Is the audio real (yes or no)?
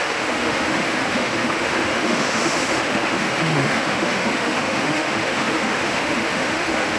no